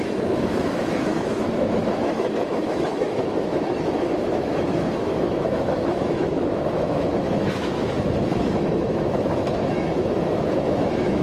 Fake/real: fake